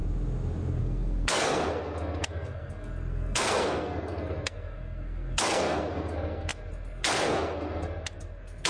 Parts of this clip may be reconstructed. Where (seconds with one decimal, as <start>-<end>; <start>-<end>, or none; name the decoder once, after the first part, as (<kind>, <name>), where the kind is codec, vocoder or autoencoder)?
0.8-8.7 (codec, SNAC)